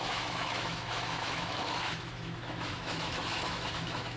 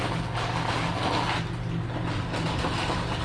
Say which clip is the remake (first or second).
first